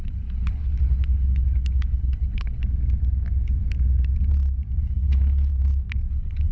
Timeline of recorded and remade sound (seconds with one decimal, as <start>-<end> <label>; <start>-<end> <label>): 0.0-2.6 remade; 2.6-4.8 recorded; 4.8-5.5 remade; 5.5-6.1 recorded; 6.1-6.5 remade